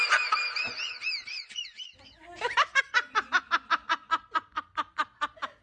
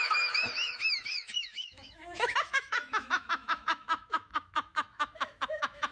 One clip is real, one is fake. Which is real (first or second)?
first